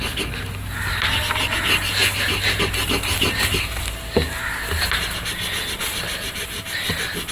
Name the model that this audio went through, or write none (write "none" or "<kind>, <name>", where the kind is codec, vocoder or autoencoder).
none